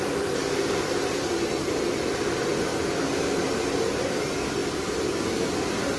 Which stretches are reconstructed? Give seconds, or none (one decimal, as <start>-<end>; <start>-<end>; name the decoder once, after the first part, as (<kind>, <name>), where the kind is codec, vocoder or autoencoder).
0.0-0.4 (vocoder, BigVGAN v2); 1.5-6.0